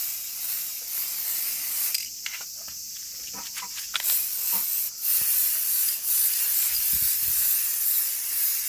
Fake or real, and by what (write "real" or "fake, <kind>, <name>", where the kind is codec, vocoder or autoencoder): real